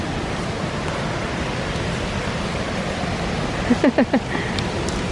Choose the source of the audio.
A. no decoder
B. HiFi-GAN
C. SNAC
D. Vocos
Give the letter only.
A